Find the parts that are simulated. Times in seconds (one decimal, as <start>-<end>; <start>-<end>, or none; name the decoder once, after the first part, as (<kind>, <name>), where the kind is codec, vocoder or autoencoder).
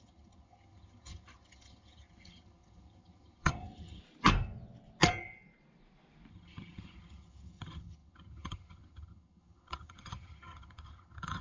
0.0-4.0 (vocoder, HiFi-GAN); 6.3-11.4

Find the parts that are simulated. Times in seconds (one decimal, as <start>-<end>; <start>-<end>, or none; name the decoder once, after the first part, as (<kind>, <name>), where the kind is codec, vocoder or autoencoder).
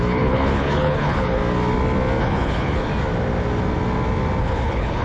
0.0-1.4 (codec, HILCodec); 2.2-2.9; 4.4-5.0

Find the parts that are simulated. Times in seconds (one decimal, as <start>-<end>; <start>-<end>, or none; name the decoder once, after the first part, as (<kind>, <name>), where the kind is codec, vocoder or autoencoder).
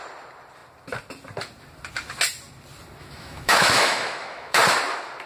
3.0-4.6 (autoencoder, DAC-VAE)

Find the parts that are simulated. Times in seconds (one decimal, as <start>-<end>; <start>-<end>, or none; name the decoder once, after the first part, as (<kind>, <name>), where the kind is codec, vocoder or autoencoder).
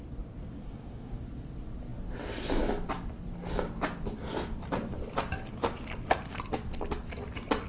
0.6-1.2 (codec, DAC)